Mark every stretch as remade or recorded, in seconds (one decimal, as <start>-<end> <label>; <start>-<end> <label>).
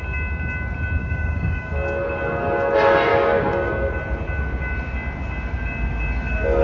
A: 0.0-1.0 recorded; 1.0-1.7 remade; 1.7-3.1 recorded; 3.1-3.9 remade; 3.9-6.6 recorded